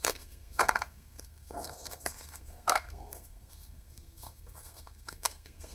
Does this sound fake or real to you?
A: fake